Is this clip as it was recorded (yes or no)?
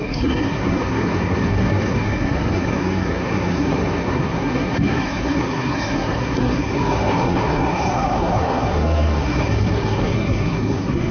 no